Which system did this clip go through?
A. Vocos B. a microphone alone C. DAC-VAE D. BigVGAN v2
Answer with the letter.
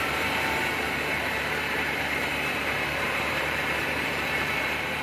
D